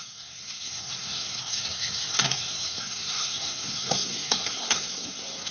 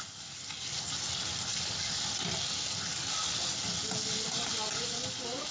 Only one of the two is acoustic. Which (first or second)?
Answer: second